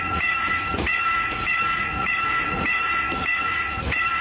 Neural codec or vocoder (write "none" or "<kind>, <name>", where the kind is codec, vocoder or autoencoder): vocoder, Vocos